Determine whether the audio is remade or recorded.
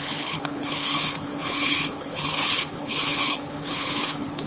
remade